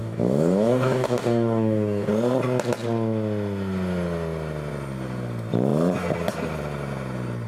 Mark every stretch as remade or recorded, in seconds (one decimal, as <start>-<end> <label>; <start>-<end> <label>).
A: 0.0-2.1 remade; 2.1-7.5 recorded